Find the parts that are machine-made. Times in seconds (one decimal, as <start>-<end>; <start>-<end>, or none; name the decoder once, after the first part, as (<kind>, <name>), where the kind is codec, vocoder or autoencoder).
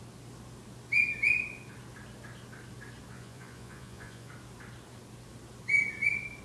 3.1-4.3 (vocoder, Vocos)